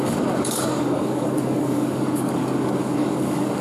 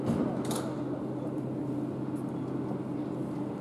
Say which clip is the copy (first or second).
first